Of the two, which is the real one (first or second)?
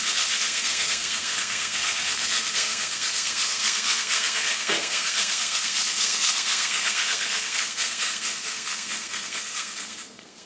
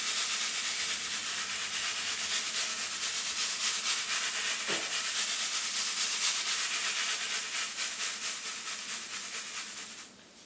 second